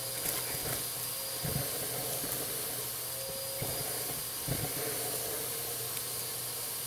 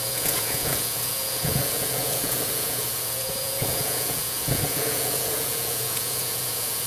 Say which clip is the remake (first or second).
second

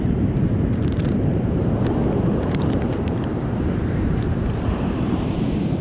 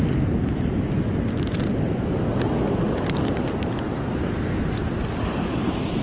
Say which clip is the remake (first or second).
first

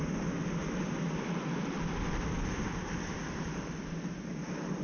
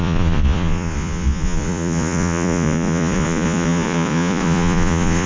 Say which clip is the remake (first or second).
second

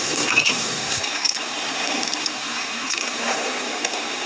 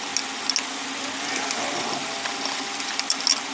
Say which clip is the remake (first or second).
first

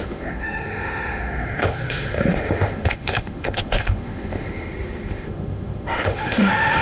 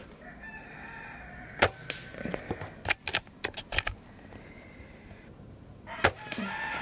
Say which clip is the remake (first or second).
first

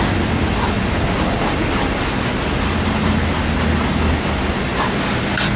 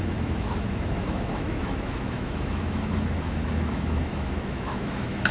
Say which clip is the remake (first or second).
second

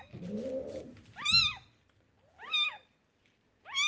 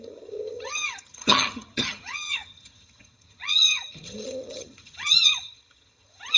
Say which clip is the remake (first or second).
second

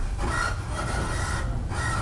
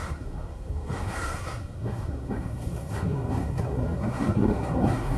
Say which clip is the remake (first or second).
second